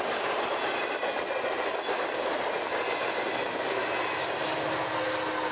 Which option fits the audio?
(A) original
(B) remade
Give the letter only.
A